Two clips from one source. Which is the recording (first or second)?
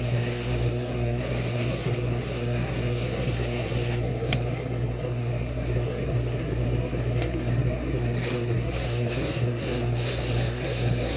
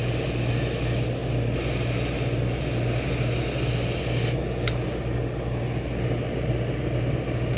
second